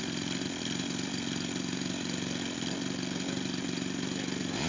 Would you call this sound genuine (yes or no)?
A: yes